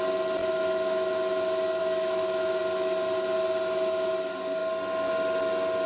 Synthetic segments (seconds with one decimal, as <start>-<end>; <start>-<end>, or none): 0.4-1.1; 1.8-2.6